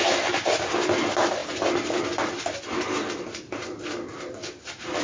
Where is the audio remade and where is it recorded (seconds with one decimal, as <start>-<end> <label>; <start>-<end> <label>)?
0.0-5.0 recorded